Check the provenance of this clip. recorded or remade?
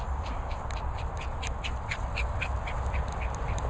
recorded